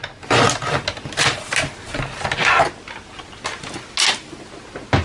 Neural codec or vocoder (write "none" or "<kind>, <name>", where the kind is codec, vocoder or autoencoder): none